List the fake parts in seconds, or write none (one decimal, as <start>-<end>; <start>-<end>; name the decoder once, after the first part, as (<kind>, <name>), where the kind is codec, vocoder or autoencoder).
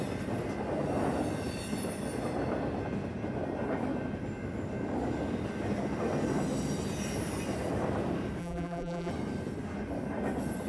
8.4-9.1 (vocoder, BigVGAN v2)